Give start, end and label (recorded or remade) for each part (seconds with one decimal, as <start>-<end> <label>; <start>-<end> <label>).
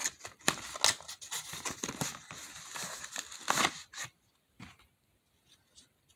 0.0-6.2 recorded